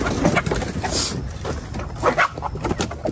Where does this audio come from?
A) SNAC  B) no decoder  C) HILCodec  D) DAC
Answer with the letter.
B